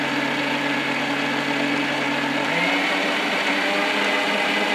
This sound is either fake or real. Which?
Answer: real